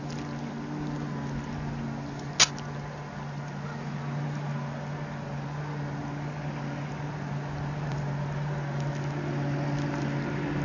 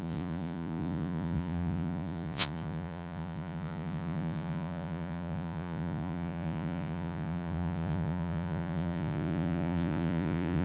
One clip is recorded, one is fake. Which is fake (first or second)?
second